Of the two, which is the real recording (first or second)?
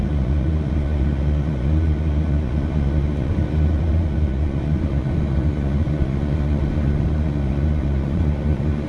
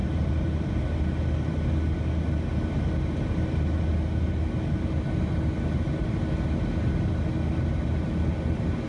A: second